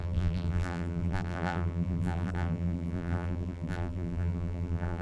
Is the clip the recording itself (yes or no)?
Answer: no